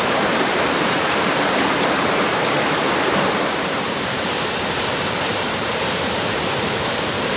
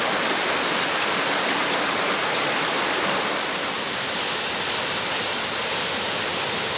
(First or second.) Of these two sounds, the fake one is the first